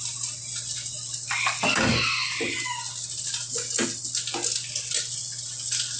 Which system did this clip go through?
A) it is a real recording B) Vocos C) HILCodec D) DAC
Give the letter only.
A